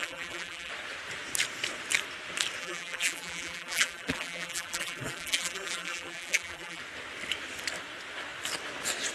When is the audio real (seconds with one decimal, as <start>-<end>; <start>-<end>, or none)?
0.7-2.6; 6.8-9.1